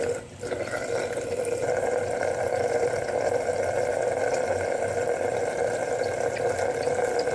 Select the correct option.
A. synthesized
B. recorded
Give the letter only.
B